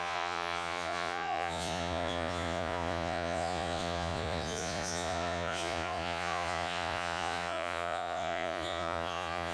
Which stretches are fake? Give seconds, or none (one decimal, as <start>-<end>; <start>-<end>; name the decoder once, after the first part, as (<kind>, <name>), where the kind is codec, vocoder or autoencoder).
0.0-9.5 (vocoder, Vocos)